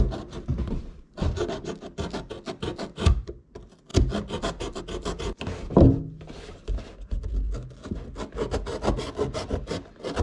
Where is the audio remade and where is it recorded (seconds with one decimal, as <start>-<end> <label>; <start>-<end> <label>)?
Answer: 0.0-10.2 recorded